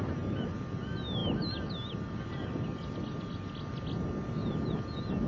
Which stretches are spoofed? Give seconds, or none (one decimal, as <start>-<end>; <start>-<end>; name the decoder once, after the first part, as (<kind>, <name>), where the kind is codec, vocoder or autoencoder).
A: none